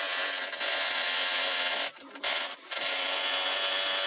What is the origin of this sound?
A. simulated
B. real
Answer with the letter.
B